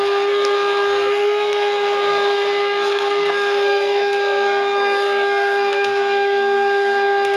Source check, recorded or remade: remade